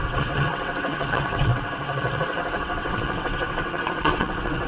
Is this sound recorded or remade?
remade